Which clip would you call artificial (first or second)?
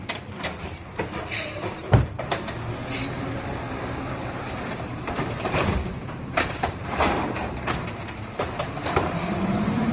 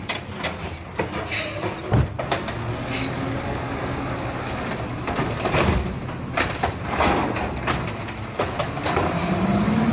first